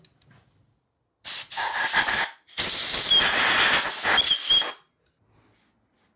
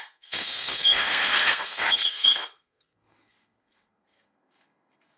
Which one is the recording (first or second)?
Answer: first